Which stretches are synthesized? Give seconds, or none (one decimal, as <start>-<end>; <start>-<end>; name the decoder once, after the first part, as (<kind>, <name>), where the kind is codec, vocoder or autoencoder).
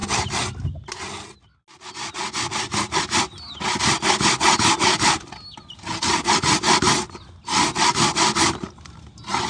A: none